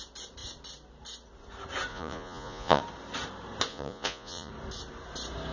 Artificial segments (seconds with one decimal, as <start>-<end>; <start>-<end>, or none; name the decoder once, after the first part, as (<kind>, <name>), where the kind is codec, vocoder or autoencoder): 1.9-2.8 (vocoder, Vocos); 3.7-4.5